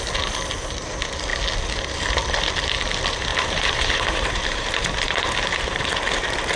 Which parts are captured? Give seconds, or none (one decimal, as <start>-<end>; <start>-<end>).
0.0-3.3